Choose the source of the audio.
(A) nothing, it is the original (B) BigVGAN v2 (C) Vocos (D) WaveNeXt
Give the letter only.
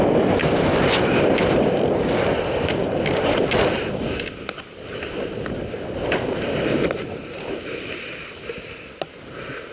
A